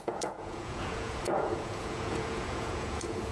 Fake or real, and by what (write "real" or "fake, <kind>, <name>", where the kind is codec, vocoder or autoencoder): fake, vocoder, Vocos